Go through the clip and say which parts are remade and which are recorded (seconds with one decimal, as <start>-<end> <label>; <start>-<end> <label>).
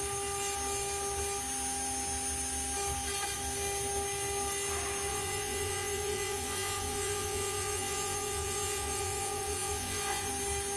0.0-5.1 recorded; 5.1-10.3 remade; 10.3-10.8 recorded